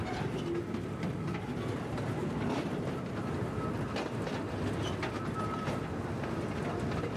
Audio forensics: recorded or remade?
recorded